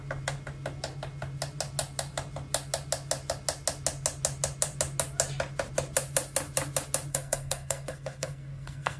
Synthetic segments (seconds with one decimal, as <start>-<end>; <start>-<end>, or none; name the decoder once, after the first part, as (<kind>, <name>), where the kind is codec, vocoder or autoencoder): 7.1-9.0 (codec, SNAC)

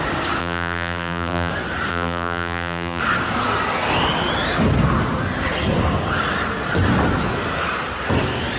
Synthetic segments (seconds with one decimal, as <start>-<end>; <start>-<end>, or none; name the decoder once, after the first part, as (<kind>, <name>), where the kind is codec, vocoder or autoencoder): 0.4-1.5 (vocoder, BigVGAN v2); 1.9-3.0